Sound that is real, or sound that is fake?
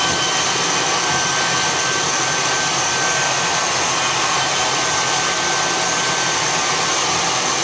real